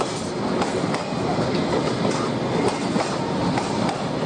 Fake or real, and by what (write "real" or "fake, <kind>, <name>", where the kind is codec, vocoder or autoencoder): real